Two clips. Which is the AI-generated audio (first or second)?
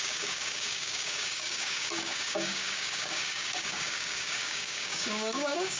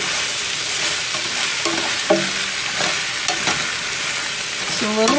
first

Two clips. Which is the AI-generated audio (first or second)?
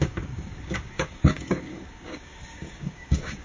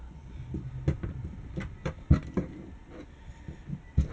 first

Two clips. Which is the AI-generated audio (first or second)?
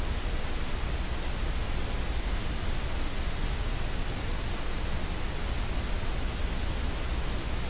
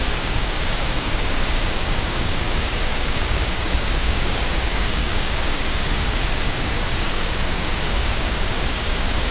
second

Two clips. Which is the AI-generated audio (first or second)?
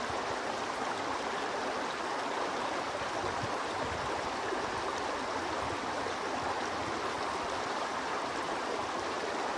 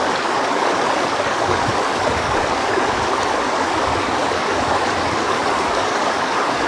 second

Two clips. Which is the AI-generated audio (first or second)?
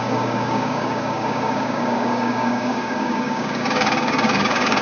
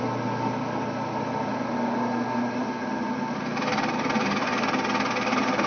first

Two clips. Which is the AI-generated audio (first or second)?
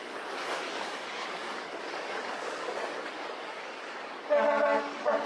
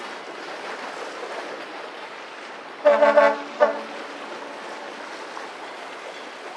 first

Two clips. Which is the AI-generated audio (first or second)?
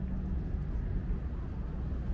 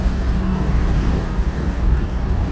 second